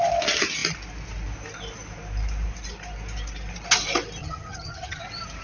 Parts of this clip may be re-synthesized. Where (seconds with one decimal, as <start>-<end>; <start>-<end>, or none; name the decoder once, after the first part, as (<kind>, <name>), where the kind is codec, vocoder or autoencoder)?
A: 4.2-5.0 (vocoder, HiFi-GAN)